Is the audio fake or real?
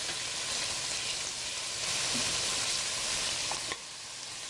real